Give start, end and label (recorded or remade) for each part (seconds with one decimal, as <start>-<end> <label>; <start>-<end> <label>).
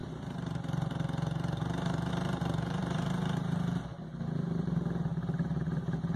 0.0-6.2 remade